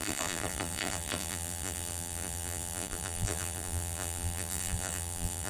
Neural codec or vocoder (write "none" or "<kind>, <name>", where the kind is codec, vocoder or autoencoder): vocoder, BigVGAN v2